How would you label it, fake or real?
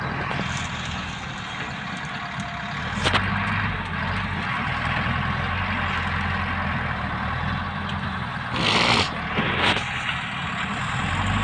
real